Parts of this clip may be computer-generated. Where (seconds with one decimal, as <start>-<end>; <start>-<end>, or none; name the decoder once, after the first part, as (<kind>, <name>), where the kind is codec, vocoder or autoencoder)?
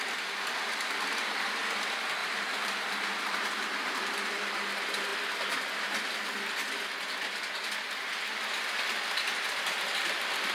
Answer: 2.2-4.1 (vocoder, BigVGAN v2)